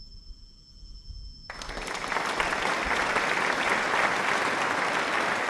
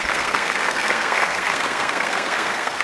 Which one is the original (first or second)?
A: first